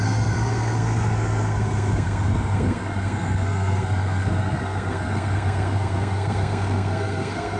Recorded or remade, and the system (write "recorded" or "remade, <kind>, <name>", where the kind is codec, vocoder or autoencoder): remade, codec, SNAC